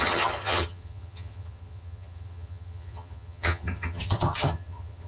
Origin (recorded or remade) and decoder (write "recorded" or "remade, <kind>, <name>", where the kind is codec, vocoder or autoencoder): remade, vocoder, HiFi-GAN